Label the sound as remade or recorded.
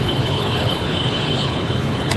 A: remade